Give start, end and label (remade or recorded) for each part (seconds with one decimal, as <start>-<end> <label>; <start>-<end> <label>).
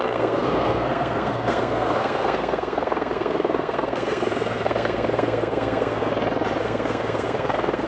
0.0-6.1 remade; 6.1-6.6 recorded; 6.6-7.9 remade